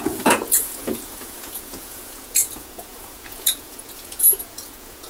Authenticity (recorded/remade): remade